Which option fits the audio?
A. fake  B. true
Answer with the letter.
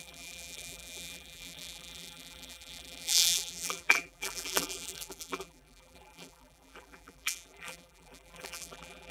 A